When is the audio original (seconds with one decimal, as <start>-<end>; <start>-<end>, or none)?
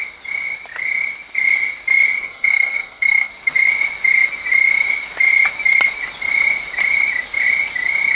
0.0-2.2; 3.3-8.1